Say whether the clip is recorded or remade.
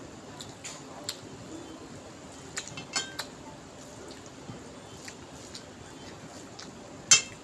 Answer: recorded